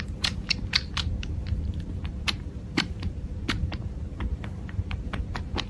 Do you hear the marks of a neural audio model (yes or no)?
yes